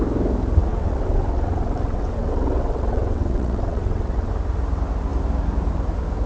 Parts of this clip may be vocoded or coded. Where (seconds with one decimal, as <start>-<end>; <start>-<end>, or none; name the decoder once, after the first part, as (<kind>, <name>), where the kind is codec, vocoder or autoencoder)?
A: 0.7-4.3 (vocoder, WaveNeXt)